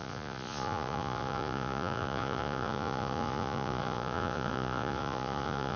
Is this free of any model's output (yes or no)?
no